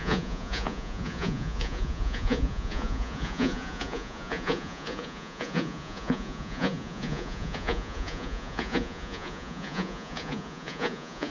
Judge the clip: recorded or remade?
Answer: remade